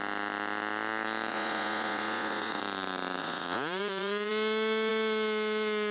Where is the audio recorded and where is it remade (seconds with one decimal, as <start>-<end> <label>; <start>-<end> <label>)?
0.0-1.3 recorded; 1.3-2.6 remade; 2.6-3.2 recorded; 3.2-4.3 remade; 4.3-5.9 recorded